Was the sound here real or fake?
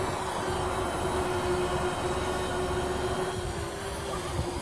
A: real